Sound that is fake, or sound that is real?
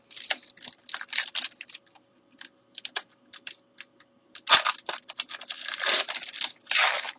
real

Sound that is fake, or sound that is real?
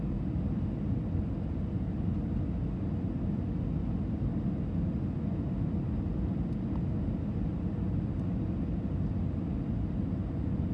real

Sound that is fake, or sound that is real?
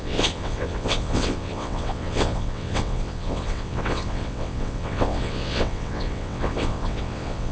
fake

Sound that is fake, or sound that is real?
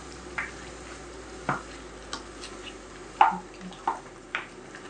real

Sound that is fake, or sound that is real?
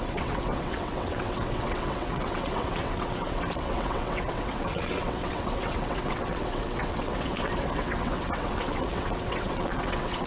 fake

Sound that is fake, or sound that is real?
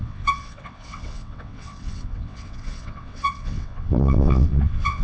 fake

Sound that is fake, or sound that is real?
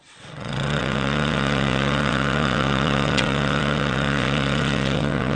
fake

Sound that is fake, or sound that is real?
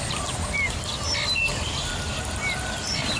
real